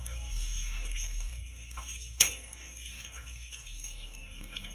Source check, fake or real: fake